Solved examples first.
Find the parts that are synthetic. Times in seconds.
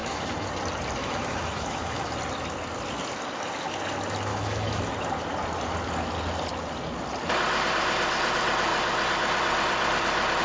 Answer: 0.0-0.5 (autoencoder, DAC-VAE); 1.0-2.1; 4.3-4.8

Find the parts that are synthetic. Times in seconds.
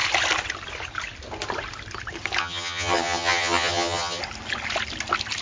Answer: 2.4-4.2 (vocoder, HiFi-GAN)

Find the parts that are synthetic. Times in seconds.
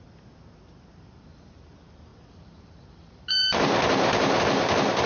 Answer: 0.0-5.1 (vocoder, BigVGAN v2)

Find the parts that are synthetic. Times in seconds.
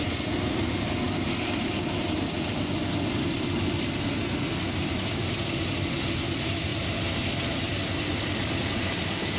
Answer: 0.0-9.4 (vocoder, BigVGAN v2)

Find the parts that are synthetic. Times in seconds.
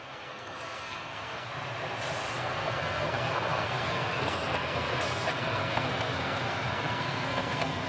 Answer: 0.0-1.5 (codec, SNAC); 2.3-7.9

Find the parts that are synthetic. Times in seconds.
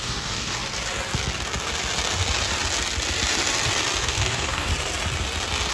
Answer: 0.0-0.6 (codec, DAC); 4.0-4.7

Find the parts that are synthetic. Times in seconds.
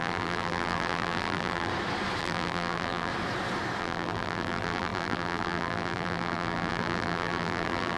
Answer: 0.0-1.7 (vocoder, BigVGAN v2); 2.2-3.1; 3.8-8.0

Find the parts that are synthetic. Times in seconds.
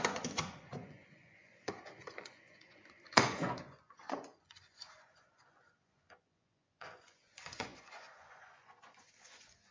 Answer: 0.0-9.7 (vocoder, Vocos)